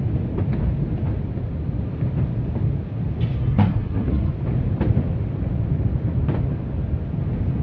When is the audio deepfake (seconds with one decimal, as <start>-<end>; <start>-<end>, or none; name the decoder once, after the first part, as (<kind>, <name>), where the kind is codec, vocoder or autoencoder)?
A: 3.4-4.3 (codec, SNAC)